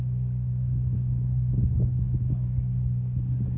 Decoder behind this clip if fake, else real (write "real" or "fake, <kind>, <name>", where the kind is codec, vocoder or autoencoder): fake, codec, DAC